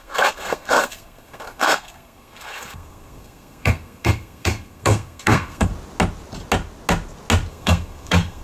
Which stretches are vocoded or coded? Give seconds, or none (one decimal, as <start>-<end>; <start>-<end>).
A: 0.0-5.7; 7.5-8.4